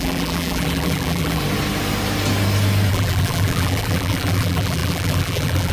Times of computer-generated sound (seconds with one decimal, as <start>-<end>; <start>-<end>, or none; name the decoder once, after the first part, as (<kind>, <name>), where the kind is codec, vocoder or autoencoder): 0.0-1.4 (vocoder, BigVGAN v2); 2.9-5.7